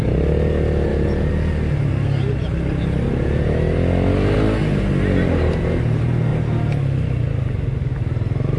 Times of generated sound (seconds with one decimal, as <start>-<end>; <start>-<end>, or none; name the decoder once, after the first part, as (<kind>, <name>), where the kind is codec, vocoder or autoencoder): none